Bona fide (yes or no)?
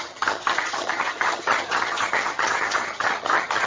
no